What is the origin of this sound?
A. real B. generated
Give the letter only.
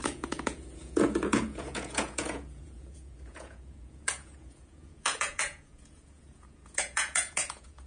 B